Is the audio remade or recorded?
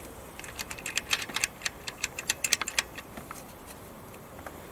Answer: remade